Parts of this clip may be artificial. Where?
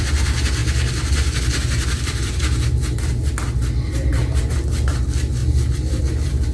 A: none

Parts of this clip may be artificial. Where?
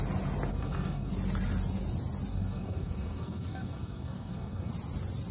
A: 0.5-1.1 (codec, SNAC); 2.3-4.7